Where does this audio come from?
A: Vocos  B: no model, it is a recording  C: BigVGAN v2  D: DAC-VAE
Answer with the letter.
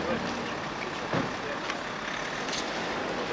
B